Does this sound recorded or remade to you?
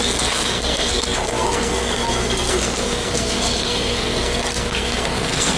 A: remade